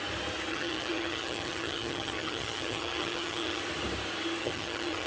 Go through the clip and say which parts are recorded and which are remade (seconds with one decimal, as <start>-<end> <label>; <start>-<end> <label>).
0.0-0.5 recorded; 0.5-3.6 remade; 3.6-4.4 recorded; 4.4-5.1 remade